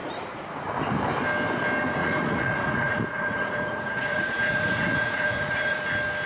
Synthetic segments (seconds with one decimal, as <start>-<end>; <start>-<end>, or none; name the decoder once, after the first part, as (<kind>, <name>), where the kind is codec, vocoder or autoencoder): 0.0-0.8 (vocoder, Vocos); 2.0-5.8